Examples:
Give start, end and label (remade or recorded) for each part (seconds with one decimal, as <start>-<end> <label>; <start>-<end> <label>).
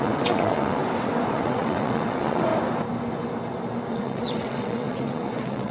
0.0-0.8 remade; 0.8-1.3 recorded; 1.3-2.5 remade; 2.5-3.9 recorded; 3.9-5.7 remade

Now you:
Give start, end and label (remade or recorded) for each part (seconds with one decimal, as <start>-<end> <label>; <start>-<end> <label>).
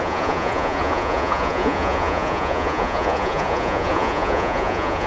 0.0-5.1 remade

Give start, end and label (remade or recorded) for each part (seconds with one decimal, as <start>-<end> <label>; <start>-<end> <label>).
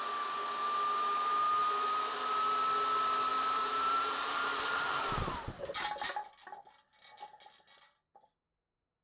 0.0-3.3 recorded; 3.3-5.0 remade; 5.0-9.0 recorded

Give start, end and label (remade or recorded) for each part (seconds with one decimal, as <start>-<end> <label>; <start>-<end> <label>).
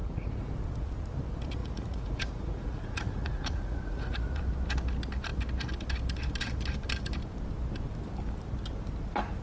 0.0-0.5 remade; 0.5-1.6 recorded; 1.6-4.4 remade; 4.4-9.4 recorded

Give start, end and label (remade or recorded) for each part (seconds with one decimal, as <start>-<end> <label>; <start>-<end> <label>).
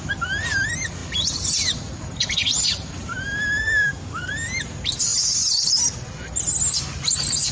0.0-3.6 recorded; 3.6-4.3 remade; 4.3-7.5 recorded